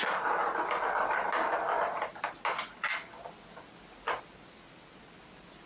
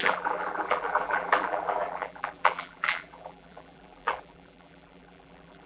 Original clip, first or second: first